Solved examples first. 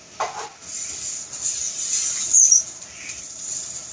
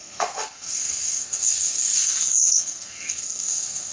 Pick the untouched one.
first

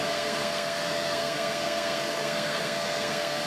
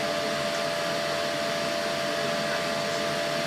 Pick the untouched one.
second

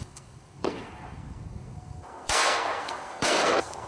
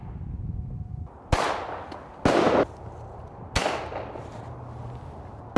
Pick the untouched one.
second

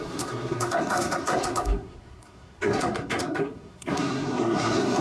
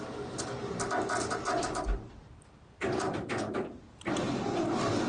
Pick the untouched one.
second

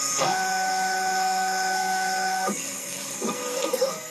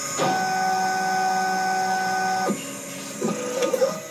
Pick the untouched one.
second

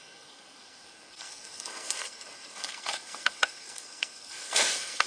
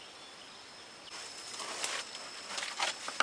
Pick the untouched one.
second